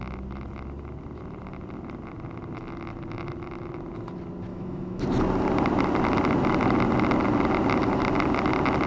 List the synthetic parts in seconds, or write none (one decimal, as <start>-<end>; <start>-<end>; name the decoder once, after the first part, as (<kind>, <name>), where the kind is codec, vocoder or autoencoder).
4.5-5.0 (autoencoder, DAC-VAE)